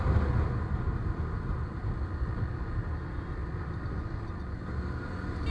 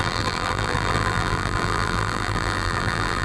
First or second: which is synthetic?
second